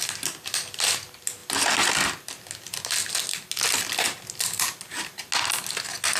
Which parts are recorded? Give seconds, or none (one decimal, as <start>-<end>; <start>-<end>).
0.0-6.2